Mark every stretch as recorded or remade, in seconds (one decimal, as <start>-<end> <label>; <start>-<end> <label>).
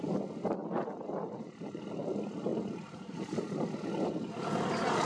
0.0-5.1 recorded